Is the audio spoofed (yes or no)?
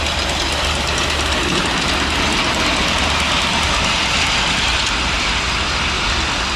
no